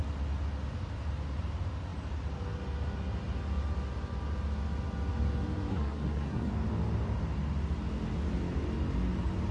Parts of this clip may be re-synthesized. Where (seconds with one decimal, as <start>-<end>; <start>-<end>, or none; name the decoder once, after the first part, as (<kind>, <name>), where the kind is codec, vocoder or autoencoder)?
5.7-6.5 (codec, SNAC)